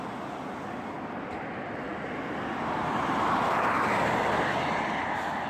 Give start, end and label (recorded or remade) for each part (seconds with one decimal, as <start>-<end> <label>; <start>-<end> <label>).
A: 0.0-5.5 recorded